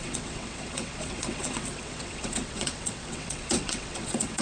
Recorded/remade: remade